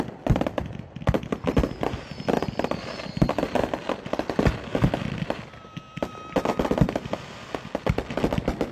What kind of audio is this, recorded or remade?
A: recorded